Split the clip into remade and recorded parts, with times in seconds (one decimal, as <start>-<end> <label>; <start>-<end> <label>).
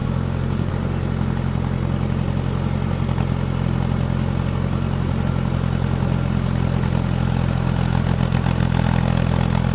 0.0-0.7 remade; 0.7-9.7 recorded